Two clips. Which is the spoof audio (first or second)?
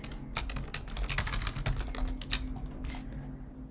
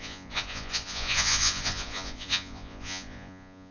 second